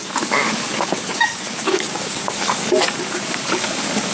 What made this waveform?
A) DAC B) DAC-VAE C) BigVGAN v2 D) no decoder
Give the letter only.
A